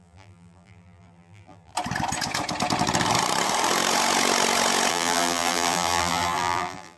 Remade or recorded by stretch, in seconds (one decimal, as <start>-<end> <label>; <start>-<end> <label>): 0.0-1.7 remade; 1.7-4.9 recorded; 4.9-7.0 remade